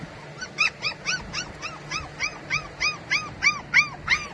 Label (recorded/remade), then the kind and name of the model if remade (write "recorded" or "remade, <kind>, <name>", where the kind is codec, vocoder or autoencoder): recorded